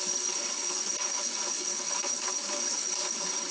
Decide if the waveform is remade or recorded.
remade